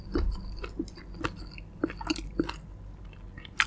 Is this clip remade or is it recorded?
recorded